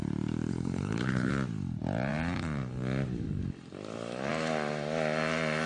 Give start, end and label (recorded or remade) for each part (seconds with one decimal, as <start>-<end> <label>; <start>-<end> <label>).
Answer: 0.0-0.5 recorded; 0.5-1.3 remade; 1.3-5.7 recorded